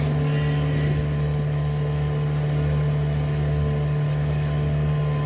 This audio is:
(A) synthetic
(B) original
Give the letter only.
B